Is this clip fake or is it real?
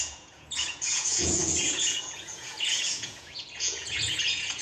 fake